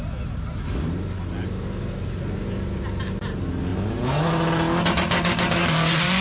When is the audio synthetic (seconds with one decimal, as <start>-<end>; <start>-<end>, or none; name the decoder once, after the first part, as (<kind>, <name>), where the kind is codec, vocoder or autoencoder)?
none